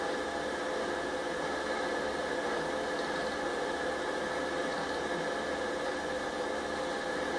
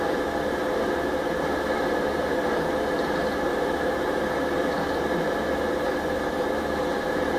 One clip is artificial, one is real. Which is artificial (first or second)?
second